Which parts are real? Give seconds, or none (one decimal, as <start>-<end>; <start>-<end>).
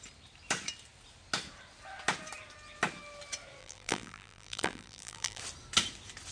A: 0.0-3.6; 5.4-6.3